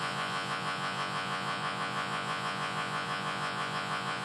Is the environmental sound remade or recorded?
remade